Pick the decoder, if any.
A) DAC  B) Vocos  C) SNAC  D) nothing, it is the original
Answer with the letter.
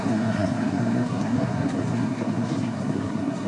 C